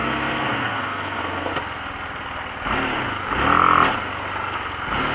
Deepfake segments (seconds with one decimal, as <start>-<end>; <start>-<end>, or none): 0.0-1.5

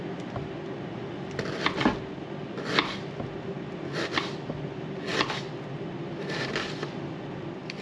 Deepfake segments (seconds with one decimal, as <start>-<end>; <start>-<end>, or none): none

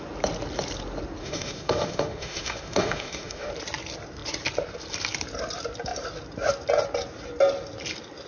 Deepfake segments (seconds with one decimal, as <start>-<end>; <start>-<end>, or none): 1.2-3.5

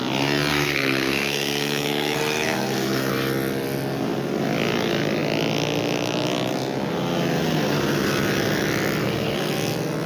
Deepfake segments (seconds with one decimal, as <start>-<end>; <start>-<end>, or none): 0.5-3.1; 9.0-9.5

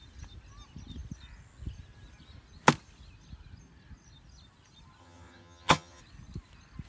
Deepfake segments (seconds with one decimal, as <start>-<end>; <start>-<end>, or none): 5.0-6.0

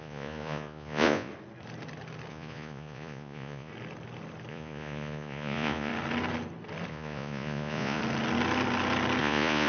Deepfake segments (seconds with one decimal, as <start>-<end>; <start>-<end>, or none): 0.0-1.3; 2.3-3.7; 4.5-5.9; 6.9-8.0; 9.2-9.7

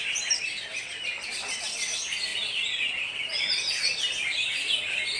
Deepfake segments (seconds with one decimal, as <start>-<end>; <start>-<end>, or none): none

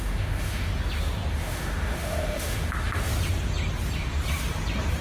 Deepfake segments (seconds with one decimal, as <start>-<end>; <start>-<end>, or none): 0.0-0.7; 1.3-3.1